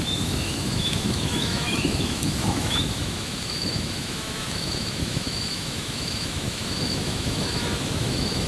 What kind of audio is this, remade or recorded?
remade